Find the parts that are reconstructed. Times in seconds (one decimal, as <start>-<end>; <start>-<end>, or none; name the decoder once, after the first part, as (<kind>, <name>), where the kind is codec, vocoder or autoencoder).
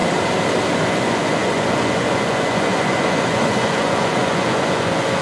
0.8-5.2 (vocoder, Vocos)